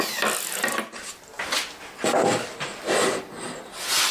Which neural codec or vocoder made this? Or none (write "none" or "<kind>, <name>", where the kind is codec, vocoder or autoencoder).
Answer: none